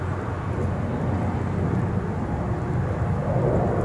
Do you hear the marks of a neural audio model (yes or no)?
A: no